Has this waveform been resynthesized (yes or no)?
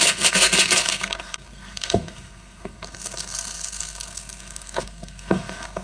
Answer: yes